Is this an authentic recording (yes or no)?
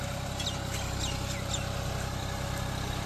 yes